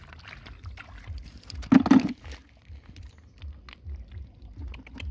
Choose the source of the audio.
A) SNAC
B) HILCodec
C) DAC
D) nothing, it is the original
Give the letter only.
D